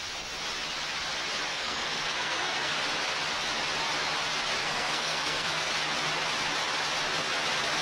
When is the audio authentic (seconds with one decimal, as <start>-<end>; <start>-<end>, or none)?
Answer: 0.0-1.5; 2.8-4.6; 5.7-7.8